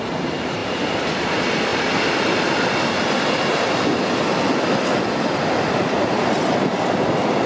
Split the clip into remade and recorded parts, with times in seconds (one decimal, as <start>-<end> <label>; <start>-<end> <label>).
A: 0.0-0.6 recorded; 0.6-1.1 remade; 1.1-7.5 recorded